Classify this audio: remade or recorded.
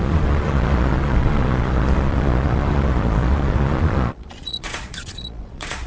remade